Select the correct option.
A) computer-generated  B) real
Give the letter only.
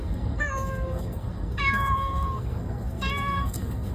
A